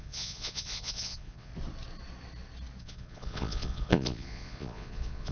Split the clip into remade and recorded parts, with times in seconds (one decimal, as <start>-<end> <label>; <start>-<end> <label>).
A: 0.0-1.5 remade; 1.5-2.8 recorded; 2.8-5.3 remade